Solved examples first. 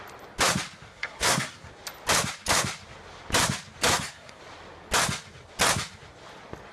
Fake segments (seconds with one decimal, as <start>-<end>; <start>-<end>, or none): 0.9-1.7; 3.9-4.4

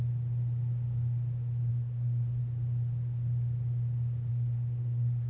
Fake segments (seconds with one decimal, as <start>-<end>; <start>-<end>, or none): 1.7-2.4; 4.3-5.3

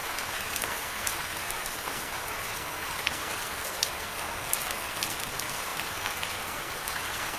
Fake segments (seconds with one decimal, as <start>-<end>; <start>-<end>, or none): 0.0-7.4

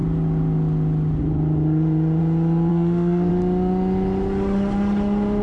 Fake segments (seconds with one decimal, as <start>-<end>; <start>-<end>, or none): 2.7-3.3

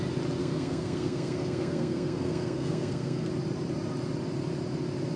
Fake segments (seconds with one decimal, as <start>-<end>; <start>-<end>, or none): 0.4-3.3

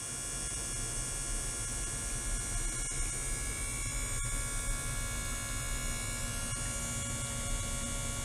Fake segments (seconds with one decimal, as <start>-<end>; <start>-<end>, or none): none